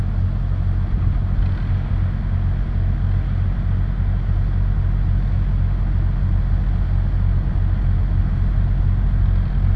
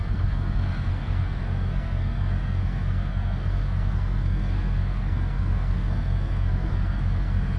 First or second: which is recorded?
first